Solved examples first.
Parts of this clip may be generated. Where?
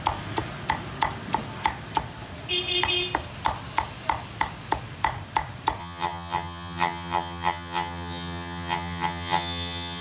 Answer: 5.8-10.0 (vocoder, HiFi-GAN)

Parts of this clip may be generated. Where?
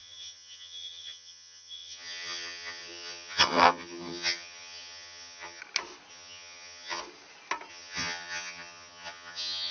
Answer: 0.0-5.6 (vocoder, HiFi-GAN); 6.1-7.0; 7.7-9.7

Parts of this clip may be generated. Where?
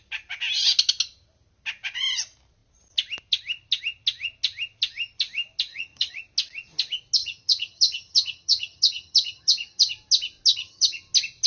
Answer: 5.7-6.2 (vocoder, HiFi-GAN); 7.2-9.9; 10.5-11.0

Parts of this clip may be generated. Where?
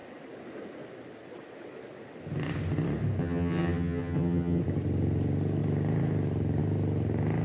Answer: 3.2-4.6 (vocoder, HiFi-GAN)